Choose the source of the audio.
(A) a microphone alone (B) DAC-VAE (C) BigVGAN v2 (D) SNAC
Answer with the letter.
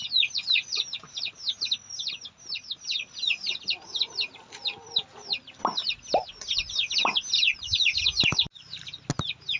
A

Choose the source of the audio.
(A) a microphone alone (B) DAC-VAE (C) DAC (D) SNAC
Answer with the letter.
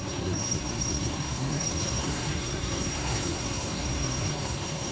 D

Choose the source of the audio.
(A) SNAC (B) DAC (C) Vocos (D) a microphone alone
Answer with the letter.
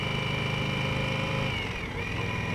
D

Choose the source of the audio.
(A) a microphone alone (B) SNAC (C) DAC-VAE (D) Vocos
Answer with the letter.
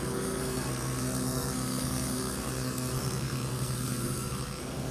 B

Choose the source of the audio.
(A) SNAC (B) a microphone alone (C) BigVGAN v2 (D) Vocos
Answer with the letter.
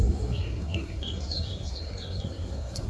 A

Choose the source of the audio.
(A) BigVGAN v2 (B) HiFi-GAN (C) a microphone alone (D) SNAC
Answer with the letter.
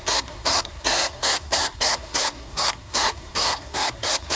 D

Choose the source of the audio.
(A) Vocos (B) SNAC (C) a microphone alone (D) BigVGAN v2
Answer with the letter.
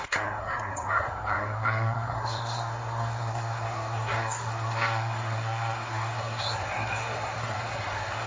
B